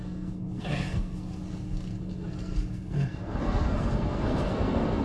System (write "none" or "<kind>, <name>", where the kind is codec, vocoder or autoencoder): codec, SNAC